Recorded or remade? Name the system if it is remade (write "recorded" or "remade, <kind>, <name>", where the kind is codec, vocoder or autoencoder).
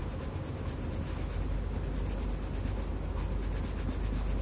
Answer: recorded